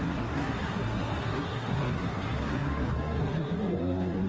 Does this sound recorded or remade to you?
remade